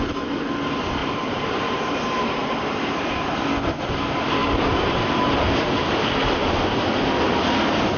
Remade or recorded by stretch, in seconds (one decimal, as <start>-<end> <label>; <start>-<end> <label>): 0.0-1.0 recorded; 1.0-3.4 remade; 3.4-4.4 recorded; 4.4-6.8 remade; 6.8-8.0 recorded